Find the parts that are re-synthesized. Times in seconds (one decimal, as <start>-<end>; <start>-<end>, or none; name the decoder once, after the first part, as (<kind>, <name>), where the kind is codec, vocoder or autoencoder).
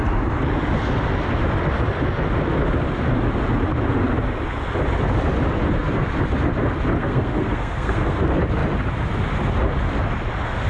7.0-8.2 (codec, SNAC)